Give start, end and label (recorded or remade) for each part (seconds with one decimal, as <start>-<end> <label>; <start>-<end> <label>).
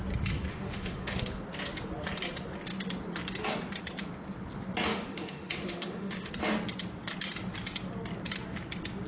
0.0-0.5 recorded; 0.5-1.2 remade; 1.2-4.9 recorded; 4.9-6.3 remade; 6.3-9.1 recorded